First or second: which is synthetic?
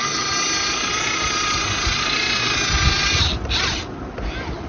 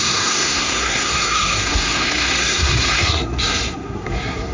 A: second